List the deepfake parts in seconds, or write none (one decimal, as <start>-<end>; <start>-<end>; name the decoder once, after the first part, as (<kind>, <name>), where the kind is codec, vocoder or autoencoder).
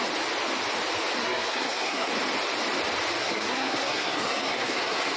1.2-2.1 (codec, SNAC); 3.2-5.2